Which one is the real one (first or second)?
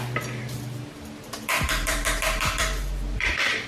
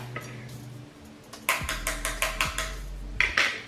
second